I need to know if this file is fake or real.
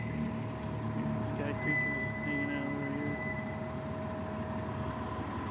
real